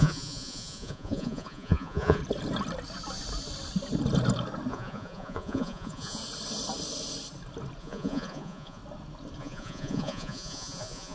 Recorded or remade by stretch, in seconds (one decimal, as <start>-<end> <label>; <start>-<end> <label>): 0.0-2.2 remade; 2.2-4.7 recorded; 4.7-6.2 remade; 6.2-7.8 recorded; 7.8-8.8 remade; 8.8-9.4 recorded; 9.4-11.1 remade